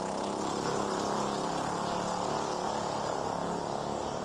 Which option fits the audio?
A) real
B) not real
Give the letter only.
A